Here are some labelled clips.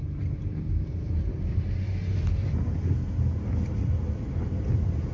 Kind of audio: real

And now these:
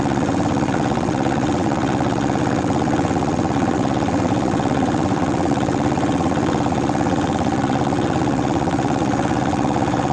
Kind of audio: fake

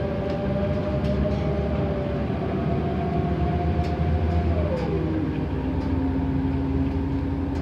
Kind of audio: real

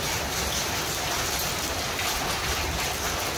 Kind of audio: real